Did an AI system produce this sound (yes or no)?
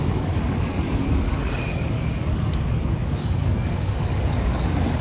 yes